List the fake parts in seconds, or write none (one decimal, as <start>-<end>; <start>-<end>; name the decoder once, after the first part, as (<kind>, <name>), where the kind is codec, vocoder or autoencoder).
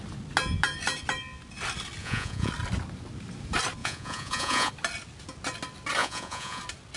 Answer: 2.0-2.5 (vocoder, Vocos); 3.8-4.7; 6.0-6.6